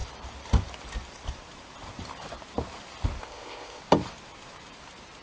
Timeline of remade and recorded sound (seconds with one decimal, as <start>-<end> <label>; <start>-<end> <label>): 0.0-3.2 recorded; 3.2-3.8 remade; 3.8-5.2 recorded